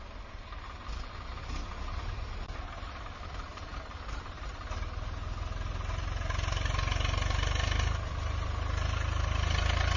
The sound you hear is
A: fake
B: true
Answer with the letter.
B